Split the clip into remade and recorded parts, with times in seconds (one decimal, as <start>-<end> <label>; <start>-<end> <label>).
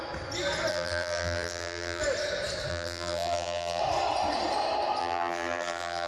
0.0-0.7 recorded; 0.7-2.0 remade; 2.0-2.7 recorded; 2.7-3.8 remade; 3.8-5.0 recorded; 5.0-6.1 remade